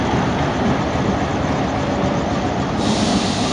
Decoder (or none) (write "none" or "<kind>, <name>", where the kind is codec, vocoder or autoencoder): none